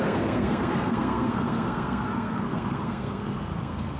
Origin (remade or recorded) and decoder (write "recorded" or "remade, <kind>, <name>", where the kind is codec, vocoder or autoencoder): remade, codec, SNAC